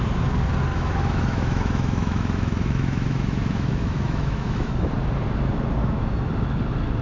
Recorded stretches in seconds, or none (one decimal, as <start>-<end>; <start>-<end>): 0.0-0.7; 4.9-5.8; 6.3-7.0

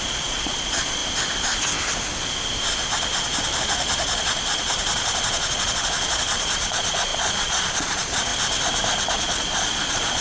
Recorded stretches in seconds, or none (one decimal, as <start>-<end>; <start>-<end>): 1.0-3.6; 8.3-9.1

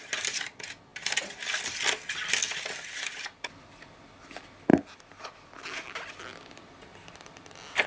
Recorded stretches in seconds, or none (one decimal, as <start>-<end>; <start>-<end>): 0.0-7.9

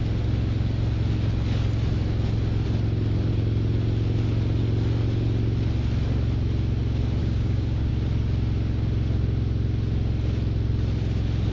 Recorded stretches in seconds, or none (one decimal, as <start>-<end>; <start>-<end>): 0.0-7.2; 7.9-11.5

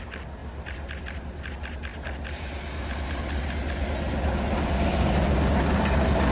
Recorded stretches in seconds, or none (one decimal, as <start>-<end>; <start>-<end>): 0.0-6.3